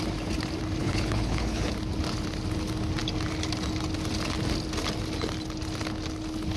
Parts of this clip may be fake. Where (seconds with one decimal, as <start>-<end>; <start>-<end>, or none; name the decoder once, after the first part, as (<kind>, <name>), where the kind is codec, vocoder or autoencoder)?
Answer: 0.8-1.7 (codec, HILCodec)